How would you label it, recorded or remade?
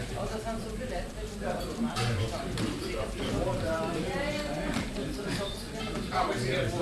remade